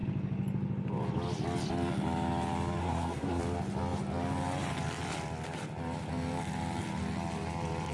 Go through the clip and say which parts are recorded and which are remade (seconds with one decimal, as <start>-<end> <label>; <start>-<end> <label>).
0.0-2.8 recorded; 2.8-3.4 remade; 3.4-7.9 recorded